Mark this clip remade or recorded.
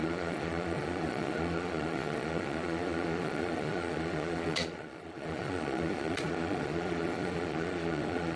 remade